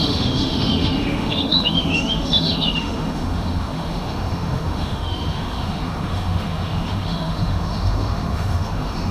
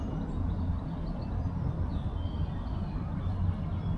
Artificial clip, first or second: first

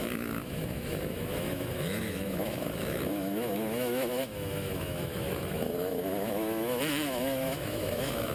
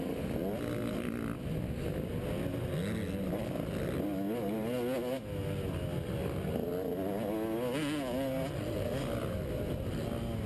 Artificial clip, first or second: first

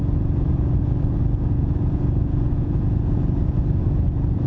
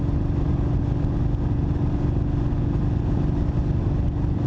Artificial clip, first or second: first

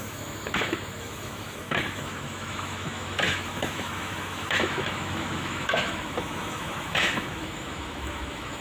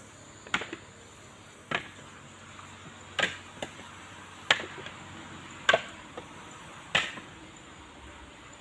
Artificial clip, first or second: first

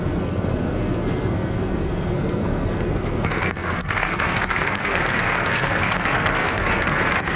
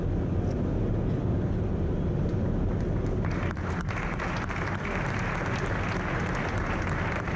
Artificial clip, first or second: first